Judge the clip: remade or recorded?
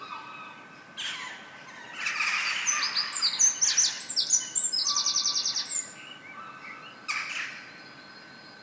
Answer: recorded